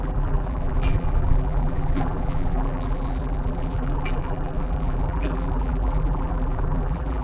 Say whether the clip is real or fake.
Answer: fake